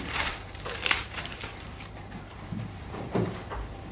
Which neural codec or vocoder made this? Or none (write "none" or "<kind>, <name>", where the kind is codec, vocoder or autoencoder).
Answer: vocoder, BigVGAN v2